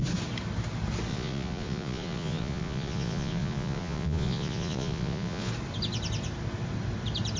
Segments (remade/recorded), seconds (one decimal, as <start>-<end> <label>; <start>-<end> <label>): 0.0-1.1 recorded; 1.1-5.5 remade; 5.5-7.4 recorded